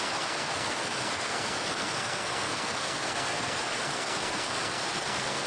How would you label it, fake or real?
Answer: fake